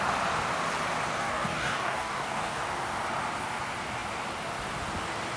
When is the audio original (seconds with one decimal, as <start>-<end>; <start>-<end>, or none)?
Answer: 0.0-1.2; 2.6-5.4